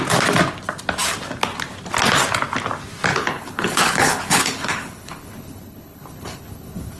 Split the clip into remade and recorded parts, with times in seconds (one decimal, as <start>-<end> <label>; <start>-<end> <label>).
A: 0.0-3.1 recorded; 3.1-7.0 remade

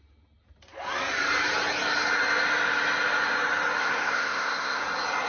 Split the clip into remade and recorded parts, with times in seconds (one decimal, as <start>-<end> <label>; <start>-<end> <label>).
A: 0.0-3.8 recorded; 3.8-4.8 remade; 4.8-5.3 recorded

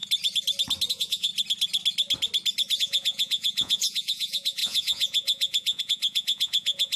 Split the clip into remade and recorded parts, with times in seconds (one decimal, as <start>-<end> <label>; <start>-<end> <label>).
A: 0.0-0.9 recorded; 0.9-1.3 remade; 1.3-2.8 recorded; 2.8-7.0 remade

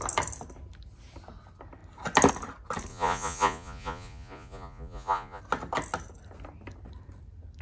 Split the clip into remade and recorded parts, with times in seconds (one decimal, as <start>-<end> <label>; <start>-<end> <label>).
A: 0.0-2.9 recorded; 2.9-5.4 remade; 5.4-7.6 recorded